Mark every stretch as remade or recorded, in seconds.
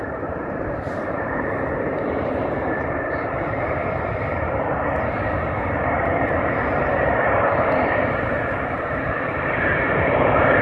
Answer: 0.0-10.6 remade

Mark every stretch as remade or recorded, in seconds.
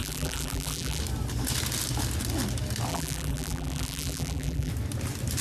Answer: 0.0-1.0 remade; 1.0-2.9 recorded; 2.9-4.7 remade; 4.7-5.4 recorded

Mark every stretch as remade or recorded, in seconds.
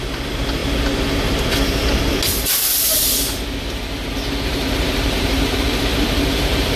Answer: 0.0-4.5 recorded; 4.5-6.8 remade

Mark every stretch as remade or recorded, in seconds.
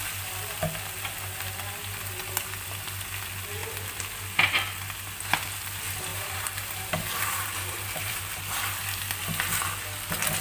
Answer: 0.0-6.1 recorded; 6.1-8.2 remade; 8.2-10.4 recorded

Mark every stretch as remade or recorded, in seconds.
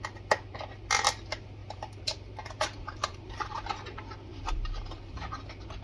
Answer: 0.0-1.6 recorded; 1.6-3.7 remade; 3.7-4.3 recorded; 4.3-5.1 remade; 5.1-5.8 recorded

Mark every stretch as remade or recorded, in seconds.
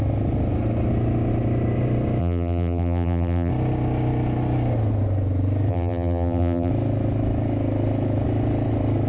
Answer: 0.0-2.2 recorded; 2.2-3.5 remade; 3.5-5.7 recorded; 5.7-6.7 remade; 6.7-9.1 recorded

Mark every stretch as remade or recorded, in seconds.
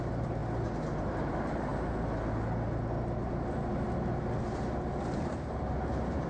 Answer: 0.0-0.4 remade; 0.4-1.0 recorded; 1.0-1.7 remade; 1.7-5.3 recorded; 5.3-6.3 remade